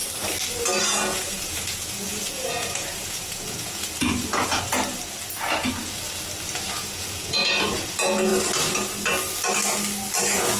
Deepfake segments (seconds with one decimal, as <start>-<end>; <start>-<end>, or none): 0.8-4.5; 6.8-8.3; 10.2-10.6